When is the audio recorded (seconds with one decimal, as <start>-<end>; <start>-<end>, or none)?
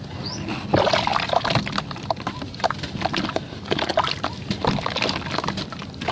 0.0-6.1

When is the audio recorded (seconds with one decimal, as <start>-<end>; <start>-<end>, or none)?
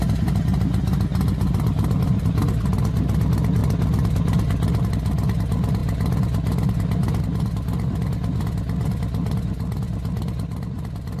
0.0-1.1; 2.4-11.2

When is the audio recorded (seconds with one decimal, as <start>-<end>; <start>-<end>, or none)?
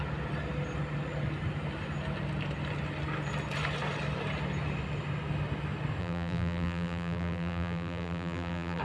0.0-6.0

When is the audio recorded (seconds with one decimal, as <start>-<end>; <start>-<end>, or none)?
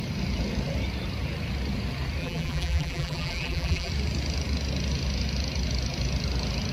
0.0-2.2; 3.9-6.7